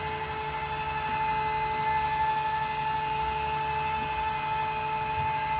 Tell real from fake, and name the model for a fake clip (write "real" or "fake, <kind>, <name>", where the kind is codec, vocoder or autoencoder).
real